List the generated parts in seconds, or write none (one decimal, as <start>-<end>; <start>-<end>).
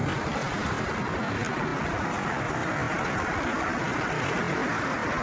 none